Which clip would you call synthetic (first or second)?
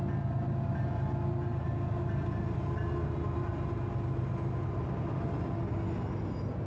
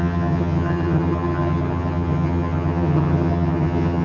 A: second